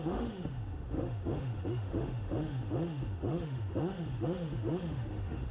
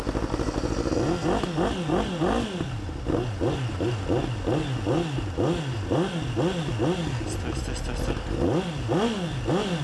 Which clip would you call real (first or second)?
second